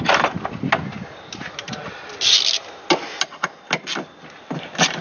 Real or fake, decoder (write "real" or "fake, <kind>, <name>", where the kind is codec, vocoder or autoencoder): real